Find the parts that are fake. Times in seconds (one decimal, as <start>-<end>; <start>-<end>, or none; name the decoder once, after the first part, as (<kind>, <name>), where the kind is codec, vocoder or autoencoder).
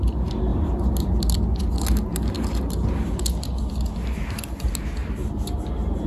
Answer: 0.5-1.2 (vocoder, BigVGAN v2); 5.0-6.1